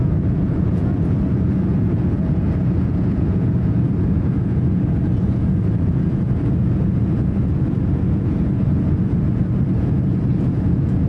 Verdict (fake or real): fake